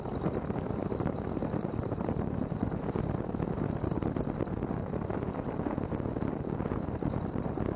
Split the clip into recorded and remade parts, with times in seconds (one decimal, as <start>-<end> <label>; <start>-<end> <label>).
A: 0.0-7.8 recorded